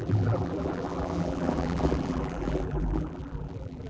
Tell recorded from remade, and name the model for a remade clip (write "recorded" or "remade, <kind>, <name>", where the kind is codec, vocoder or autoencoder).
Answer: remade, vocoder, BigVGAN v2